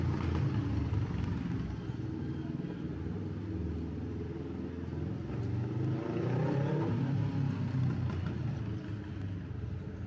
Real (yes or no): yes